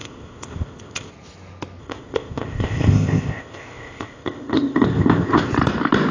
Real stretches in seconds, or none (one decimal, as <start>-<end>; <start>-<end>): 1.1-1.8; 5.5-6.1